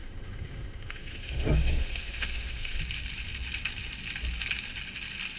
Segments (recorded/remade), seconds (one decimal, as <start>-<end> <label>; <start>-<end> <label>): 0.0-2.8 remade; 2.8-5.4 recorded